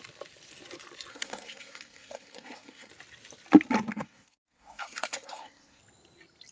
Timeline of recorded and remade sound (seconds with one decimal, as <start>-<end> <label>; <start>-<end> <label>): 0.0-1.1 recorded; 1.1-2.9 remade; 2.9-3.9 recorded; 3.9-5.8 remade; 5.8-6.5 recorded

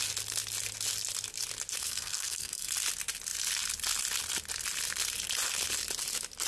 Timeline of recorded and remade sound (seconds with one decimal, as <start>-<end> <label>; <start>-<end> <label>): 0.0-1.8 recorded; 1.8-2.7 remade; 2.7-6.5 recorded

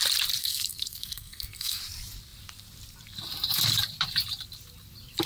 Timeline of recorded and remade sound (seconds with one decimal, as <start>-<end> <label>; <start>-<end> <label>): 0.0-0.4 recorded; 0.4-1.8 remade; 1.8-5.3 recorded

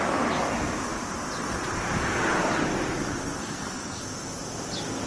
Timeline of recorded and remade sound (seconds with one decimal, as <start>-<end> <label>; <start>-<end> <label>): 0.0-3.4 recorded; 3.4-4.0 remade; 4.0-5.1 recorded

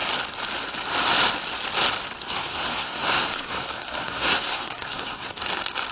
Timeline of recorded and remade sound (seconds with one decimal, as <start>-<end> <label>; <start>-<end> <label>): 0.0-2.4 recorded; 2.4-5.4 remade; 5.4-5.9 recorded

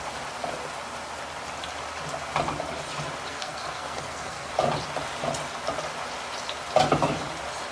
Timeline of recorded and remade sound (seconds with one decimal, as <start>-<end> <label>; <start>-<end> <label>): 0.0-3.3 recorded; 3.3-4.5 remade; 4.5-7.7 recorded

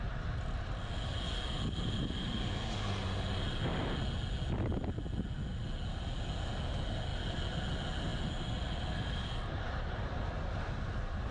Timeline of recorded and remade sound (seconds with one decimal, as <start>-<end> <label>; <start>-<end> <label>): 0.0-11.3 recorded

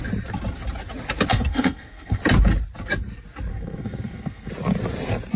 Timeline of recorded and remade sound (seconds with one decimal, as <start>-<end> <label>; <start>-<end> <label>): 0.0-1.3 recorded; 1.3-2.2 remade; 2.2-3.5 recorded; 3.5-4.5 remade; 4.5-5.4 recorded